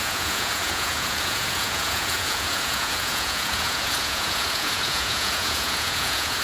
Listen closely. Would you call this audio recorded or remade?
remade